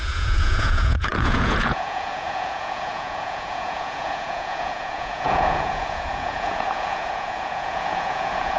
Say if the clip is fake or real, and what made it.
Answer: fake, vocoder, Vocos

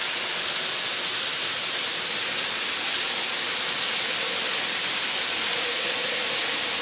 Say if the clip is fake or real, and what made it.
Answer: real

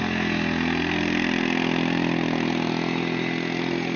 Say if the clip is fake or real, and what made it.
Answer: real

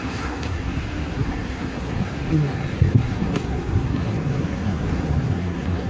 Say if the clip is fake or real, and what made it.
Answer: fake, codec, SNAC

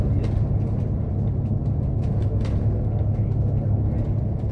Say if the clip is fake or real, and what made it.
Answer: real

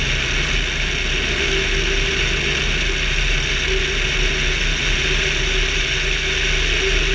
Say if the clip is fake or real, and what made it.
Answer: real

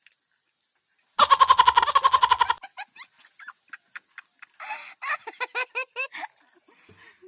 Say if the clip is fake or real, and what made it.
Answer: real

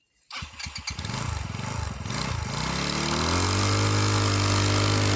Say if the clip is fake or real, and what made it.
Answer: real